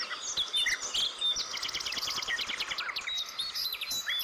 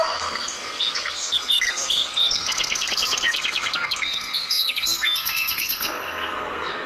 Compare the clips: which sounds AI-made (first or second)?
second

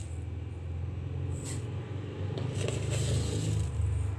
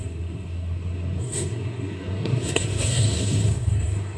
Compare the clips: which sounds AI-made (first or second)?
second